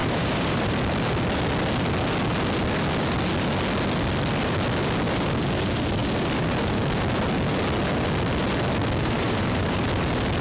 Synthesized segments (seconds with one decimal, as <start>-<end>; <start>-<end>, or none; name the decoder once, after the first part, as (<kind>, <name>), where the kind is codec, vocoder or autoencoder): 0.0-0.7 (vocoder, BigVGAN v2); 9.0-9.8